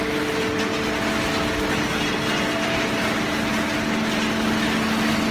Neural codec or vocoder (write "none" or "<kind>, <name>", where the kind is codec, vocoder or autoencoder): none